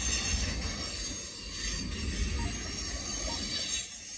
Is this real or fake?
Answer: real